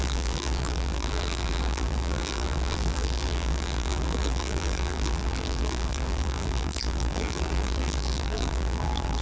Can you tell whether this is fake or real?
fake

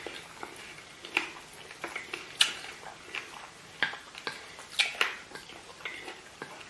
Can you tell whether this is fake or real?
real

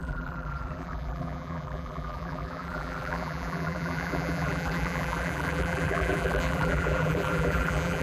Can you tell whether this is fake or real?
fake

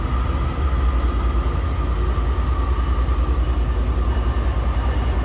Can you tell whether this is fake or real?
real